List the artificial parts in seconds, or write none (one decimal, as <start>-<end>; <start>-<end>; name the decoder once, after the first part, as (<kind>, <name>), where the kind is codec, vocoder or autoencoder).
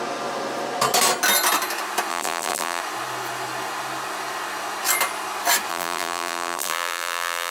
2.1-2.8 (vocoder, BigVGAN v2); 5.7-7.5